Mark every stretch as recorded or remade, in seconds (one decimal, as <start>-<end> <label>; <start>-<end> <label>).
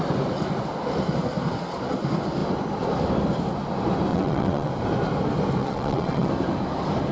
0.0-4.1 recorded; 4.1-4.7 remade; 4.7-5.6 recorded; 5.6-6.3 remade; 6.3-7.1 recorded